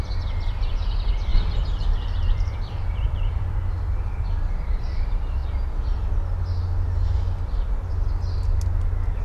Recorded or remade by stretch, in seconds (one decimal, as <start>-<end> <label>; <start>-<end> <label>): 0.0-5.4 remade; 5.4-9.2 recorded